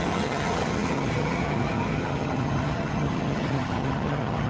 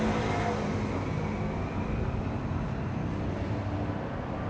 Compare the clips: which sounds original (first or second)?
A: second